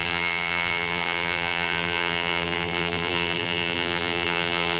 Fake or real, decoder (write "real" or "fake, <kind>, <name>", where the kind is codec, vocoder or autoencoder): fake, vocoder, BigVGAN v2